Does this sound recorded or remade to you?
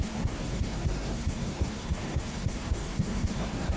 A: remade